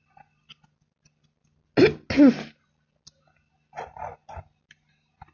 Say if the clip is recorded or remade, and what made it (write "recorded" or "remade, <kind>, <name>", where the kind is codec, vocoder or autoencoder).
recorded